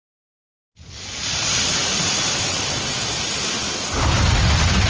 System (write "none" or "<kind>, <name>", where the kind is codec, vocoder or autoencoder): none